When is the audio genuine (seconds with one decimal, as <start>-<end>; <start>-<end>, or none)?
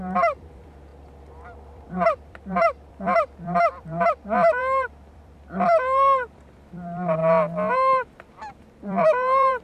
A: 7.2-7.7